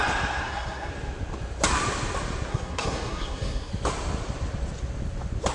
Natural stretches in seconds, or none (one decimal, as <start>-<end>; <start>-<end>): 0.0-0.4; 0.9-2.5; 3.7-5.5